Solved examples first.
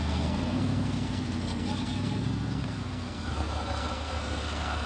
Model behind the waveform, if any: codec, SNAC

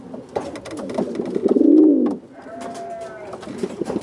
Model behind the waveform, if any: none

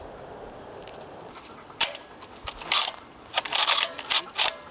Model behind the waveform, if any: none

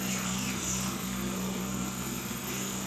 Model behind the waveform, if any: codec, SNAC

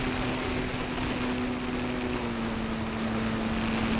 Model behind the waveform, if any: none